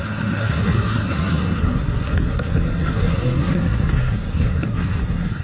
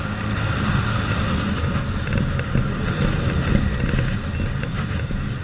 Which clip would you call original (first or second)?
second